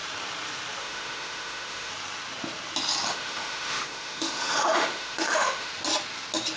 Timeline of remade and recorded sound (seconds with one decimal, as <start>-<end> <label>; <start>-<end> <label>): 0.0-0.8 recorded; 0.8-1.9 remade; 1.9-3.1 recorded; 3.1-5.7 remade; 5.7-6.6 recorded